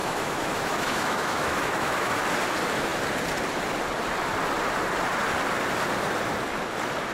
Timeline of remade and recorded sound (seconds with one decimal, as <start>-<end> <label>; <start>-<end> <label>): 0.0-2.2 remade; 2.2-7.1 recorded